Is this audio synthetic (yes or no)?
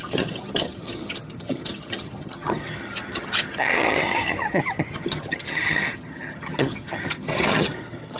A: yes